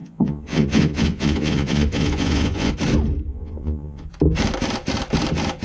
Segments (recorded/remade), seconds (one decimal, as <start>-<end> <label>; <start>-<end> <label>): 0.0-2.7 remade; 2.7-3.3 recorded; 3.3-4.1 remade; 4.1-5.6 recorded

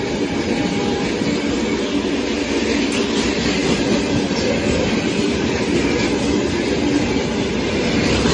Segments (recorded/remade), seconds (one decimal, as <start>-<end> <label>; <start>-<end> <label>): 0.0-8.3 recorded

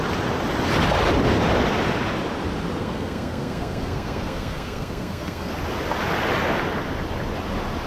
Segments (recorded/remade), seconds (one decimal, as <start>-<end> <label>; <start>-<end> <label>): 0.0-2.8 recorded; 2.8-5.5 remade; 5.5-7.9 recorded

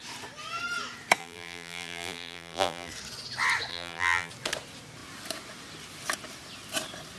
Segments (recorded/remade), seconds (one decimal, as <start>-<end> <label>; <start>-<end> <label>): 0.0-1.2 recorded; 1.2-2.9 remade; 2.9-3.7 recorded; 3.7-4.3 remade; 4.3-7.2 recorded

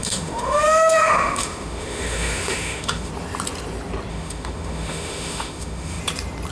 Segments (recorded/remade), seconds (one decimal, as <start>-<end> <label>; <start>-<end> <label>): 0.0-3.1 remade; 3.1-4.1 recorded; 4.1-6.0 remade; 6.0-6.5 recorded